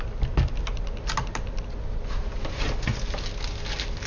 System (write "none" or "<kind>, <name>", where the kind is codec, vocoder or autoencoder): none